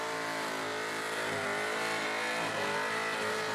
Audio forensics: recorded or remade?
recorded